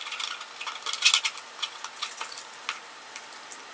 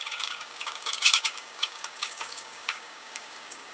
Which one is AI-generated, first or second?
second